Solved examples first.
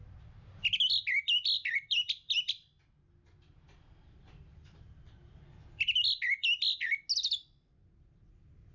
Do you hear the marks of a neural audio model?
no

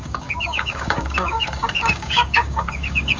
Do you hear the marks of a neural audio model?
yes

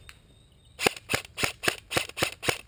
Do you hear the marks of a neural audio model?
no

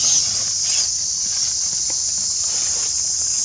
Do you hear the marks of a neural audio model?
no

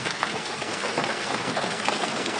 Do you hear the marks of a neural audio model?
yes